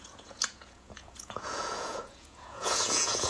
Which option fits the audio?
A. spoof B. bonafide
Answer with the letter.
A